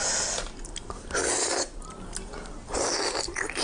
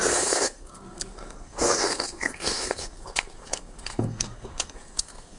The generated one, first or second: second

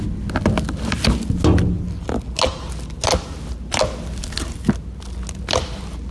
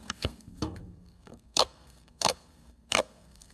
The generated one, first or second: second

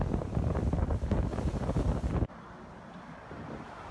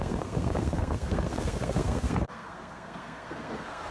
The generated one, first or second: second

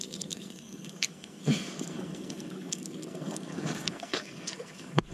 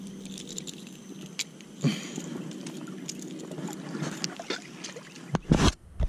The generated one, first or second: first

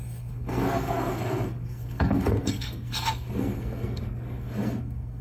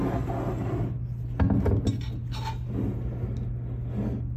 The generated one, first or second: first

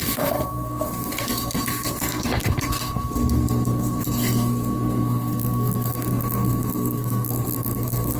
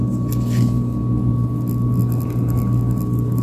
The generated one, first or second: first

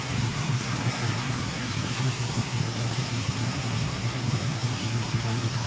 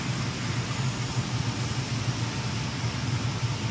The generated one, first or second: first